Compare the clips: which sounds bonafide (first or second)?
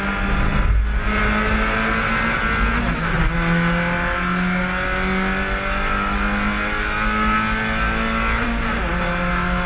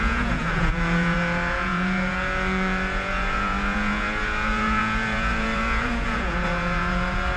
first